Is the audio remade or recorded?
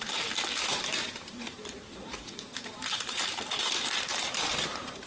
remade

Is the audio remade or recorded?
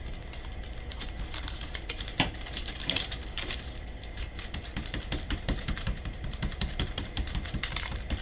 remade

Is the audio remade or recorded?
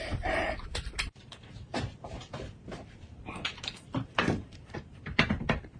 remade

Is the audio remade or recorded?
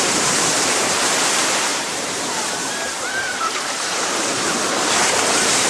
remade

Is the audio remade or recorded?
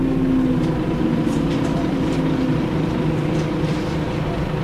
recorded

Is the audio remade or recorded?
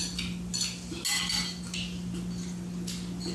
recorded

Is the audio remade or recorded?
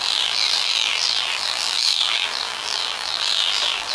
remade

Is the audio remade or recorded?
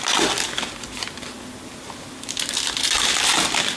recorded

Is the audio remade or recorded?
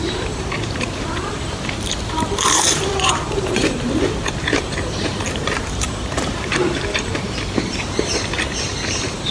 remade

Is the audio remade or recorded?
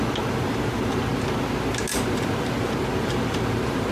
recorded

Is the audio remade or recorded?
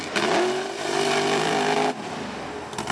recorded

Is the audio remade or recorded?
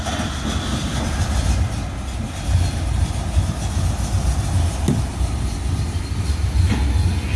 recorded